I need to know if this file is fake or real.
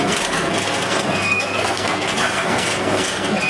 fake